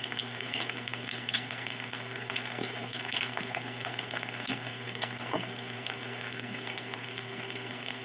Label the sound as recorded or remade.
remade